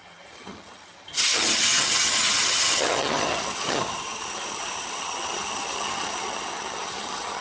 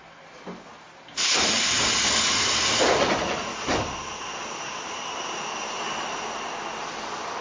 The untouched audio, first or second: second